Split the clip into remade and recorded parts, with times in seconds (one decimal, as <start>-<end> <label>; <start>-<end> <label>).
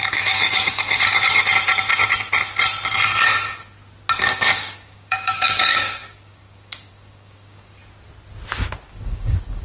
0.0-1.4 remade; 1.4-4.2 recorded; 4.2-7.8 remade; 7.8-8.9 recorded; 8.9-9.6 remade